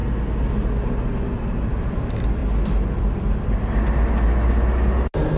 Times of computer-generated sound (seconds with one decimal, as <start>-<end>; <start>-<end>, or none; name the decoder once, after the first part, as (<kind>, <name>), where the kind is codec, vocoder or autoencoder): none